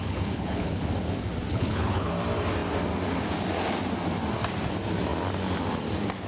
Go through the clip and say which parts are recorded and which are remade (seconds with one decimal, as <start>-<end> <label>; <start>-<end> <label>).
0.0-0.8 remade; 0.8-1.5 recorded; 1.5-2.1 remade; 2.1-6.3 recorded